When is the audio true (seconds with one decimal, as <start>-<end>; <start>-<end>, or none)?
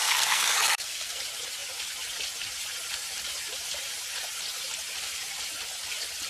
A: 1.2-6.3